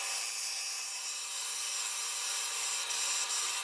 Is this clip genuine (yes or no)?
yes